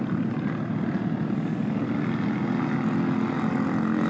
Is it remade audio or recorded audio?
recorded